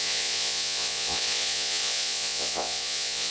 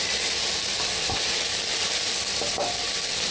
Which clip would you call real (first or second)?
second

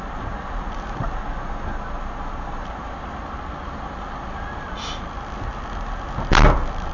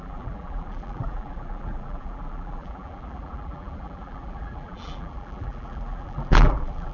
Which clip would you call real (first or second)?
first